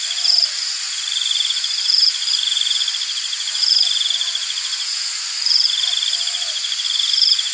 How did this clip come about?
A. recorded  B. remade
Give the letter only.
B